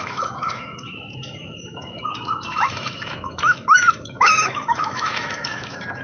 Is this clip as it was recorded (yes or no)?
no